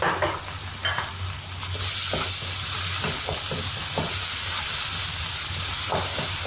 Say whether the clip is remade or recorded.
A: recorded